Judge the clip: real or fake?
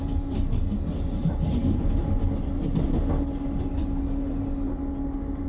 real